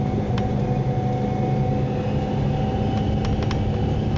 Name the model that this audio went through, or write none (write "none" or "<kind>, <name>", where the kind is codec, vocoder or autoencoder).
none